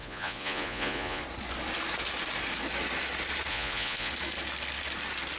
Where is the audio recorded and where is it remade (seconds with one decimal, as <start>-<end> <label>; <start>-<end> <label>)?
0.0-1.2 remade; 1.2-3.5 recorded; 3.5-4.1 remade; 4.1-5.4 recorded